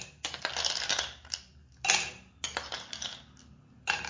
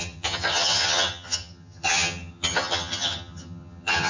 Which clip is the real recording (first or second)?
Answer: first